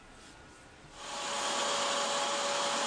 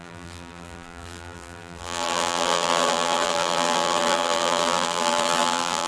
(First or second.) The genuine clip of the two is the first